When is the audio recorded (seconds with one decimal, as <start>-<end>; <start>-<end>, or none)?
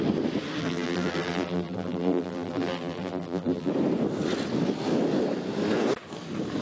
0.0-0.6; 3.7-6.6